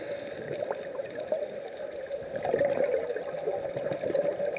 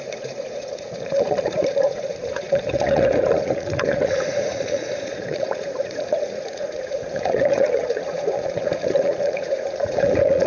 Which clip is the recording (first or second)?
first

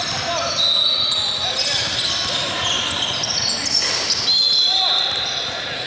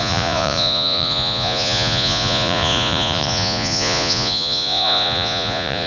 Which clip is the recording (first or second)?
first